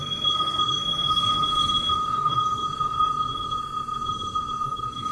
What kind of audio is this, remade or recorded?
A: remade